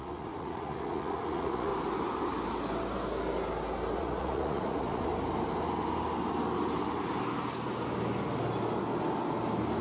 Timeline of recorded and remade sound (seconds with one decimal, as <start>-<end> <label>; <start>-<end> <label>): 0.0-1.7 remade; 1.7-4.0 recorded; 4.0-5.1 remade; 5.1-9.8 recorded